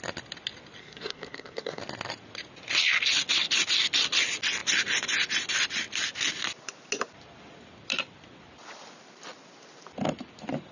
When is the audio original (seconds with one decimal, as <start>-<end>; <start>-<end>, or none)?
0.0-0.8; 1.8-10.7